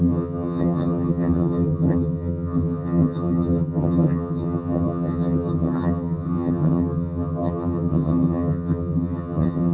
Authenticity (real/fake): fake